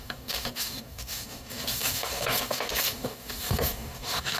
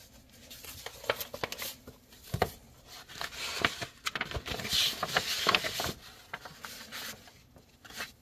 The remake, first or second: first